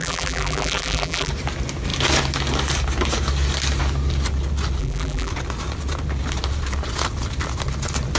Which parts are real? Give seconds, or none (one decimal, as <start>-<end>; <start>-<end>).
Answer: 1.3-4.8; 5.3-8.2